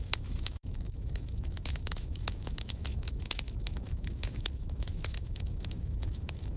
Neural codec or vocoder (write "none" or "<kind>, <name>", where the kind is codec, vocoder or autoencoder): autoencoder, DAC-VAE